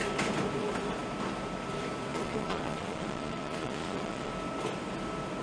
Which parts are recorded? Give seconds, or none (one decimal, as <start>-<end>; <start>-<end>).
0.0-2.1; 4.3-5.4